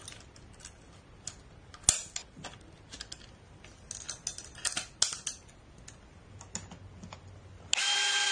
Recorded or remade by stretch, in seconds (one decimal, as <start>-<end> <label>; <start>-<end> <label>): 0.0-8.3 recorded